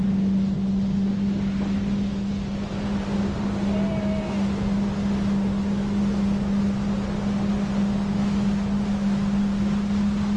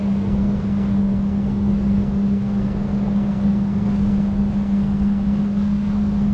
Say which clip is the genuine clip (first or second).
first